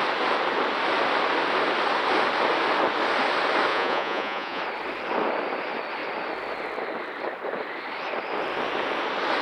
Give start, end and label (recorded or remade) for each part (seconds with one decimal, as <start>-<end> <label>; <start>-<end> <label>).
0.0-3.7 recorded; 3.7-4.6 remade; 4.6-9.4 recorded